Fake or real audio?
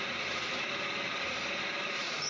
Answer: real